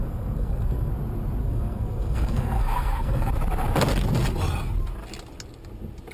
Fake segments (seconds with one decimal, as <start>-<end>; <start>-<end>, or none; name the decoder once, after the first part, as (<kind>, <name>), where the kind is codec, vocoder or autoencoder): 0.0-0.9 (codec, SNAC); 1.4-3.3